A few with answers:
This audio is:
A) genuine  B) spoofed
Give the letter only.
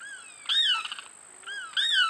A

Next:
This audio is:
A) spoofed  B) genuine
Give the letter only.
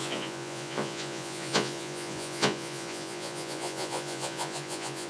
A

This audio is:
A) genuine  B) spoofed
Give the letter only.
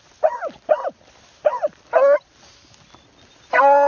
A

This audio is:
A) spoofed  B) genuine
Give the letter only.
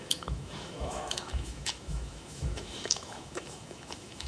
A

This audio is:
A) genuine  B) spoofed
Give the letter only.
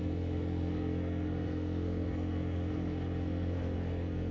B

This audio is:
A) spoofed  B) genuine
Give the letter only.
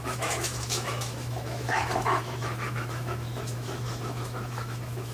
A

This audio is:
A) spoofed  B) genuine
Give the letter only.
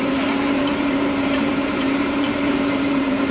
A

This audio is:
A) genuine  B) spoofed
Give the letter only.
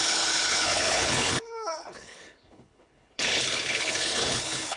B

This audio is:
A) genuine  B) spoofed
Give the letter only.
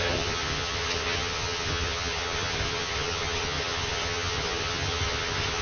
B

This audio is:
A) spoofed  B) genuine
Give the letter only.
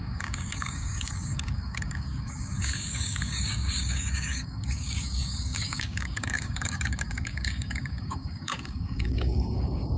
A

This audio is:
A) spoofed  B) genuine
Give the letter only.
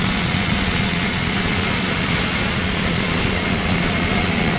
A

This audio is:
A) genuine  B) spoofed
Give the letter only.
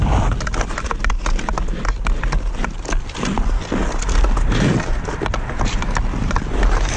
A